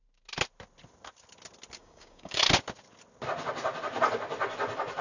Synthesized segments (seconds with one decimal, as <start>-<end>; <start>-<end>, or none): 1.8-2.4